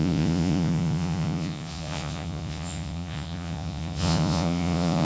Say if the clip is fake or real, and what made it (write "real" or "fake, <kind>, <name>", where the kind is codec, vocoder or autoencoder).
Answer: fake, vocoder, Vocos